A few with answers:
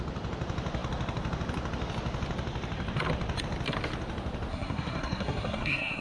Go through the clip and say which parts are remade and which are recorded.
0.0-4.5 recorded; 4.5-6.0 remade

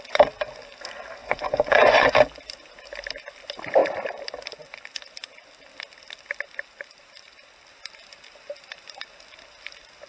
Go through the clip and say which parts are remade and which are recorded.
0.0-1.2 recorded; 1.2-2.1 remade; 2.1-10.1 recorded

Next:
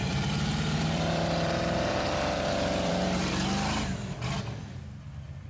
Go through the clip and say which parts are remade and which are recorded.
0.0-3.3 remade; 3.3-5.5 recorded

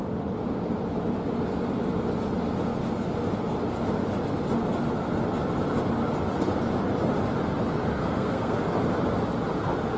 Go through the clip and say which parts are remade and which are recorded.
0.0-8.0 recorded; 8.0-8.6 remade; 8.6-10.0 recorded

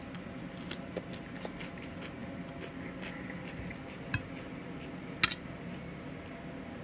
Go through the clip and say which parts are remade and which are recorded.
0.0-6.8 recorded